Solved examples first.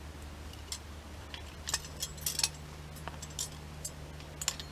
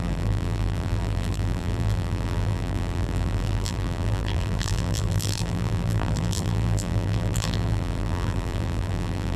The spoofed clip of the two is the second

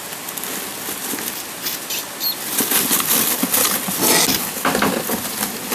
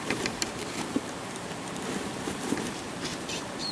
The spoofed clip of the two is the second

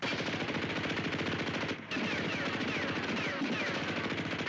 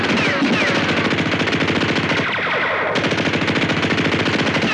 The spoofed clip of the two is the first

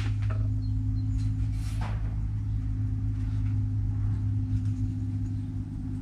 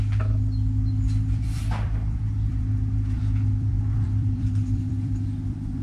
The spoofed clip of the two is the second